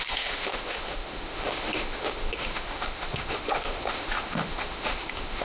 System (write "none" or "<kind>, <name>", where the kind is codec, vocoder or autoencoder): autoencoder, DAC-VAE